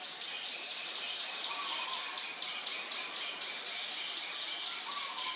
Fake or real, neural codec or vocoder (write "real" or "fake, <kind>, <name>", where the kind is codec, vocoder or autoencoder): real